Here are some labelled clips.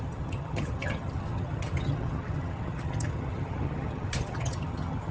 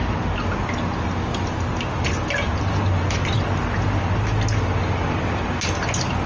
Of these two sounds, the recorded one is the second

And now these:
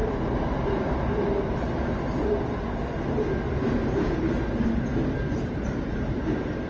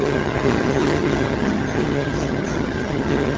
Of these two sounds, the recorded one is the first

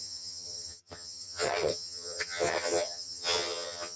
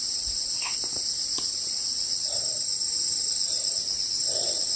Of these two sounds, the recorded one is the second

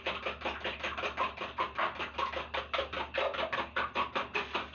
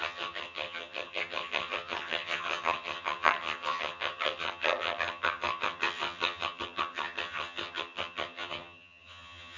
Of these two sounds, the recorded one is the first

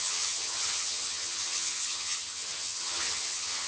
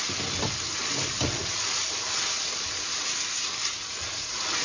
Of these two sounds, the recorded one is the second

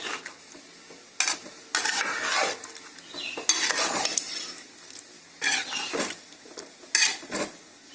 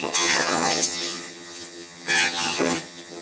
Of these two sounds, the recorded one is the first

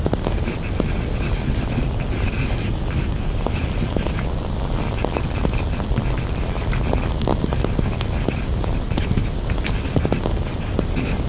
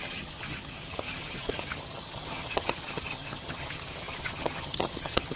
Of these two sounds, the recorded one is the first